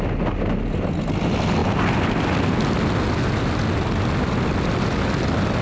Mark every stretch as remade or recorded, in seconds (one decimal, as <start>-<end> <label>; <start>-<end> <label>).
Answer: 0.0-5.6 recorded